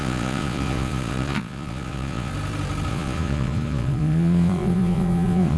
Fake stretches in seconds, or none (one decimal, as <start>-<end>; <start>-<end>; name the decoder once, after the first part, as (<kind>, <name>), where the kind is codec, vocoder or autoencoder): 0.0-2.3 (vocoder, Vocos); 2.9-5.6